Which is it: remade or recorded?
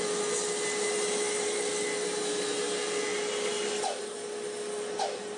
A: recorded